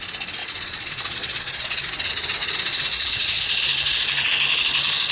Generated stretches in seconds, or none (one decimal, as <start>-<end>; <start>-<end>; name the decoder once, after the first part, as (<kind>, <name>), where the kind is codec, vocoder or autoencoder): 0.4-1.9 (vocoder, Vocos); 2.4-3.6